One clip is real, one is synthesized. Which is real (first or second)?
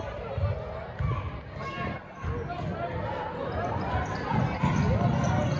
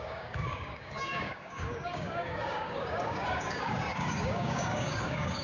first